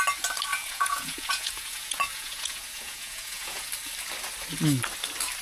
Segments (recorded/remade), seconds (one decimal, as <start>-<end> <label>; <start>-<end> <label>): 0.0-0.5 recorded; 0.5-3.7 remade; 3.7-5.4 recorded